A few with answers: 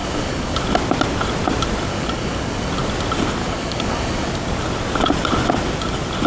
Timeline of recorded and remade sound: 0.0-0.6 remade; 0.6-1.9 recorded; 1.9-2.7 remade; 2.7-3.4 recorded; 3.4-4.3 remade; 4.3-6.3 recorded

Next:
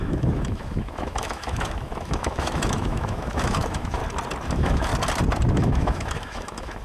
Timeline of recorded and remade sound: 0.0-4.0 remade; 4.0-4.5 recorded; 4.5-4.9 remade; 4.9-5.5 recorded; 5.5-6.8 remade